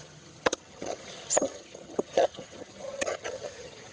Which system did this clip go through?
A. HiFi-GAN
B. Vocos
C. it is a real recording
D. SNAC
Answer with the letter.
A